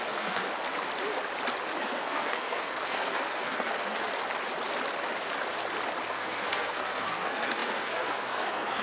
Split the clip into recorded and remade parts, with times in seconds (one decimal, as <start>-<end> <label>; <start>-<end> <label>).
0.0-0.4 remade; 0.4-1.8 recorded; 1.8-4.1 remade; 4.1-6.1 recorded; 6.1-8.8 remade